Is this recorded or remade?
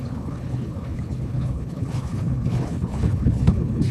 remade